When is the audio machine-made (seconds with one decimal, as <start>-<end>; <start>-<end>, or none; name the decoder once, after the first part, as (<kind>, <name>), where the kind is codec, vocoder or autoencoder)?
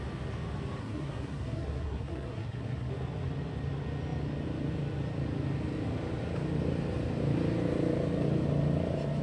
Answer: 0.8-2.9 (codec, SNAC)